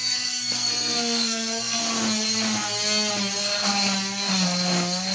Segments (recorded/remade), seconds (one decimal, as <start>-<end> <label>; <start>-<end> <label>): 0.0-1.8 remade; 1.8-5.1 recorded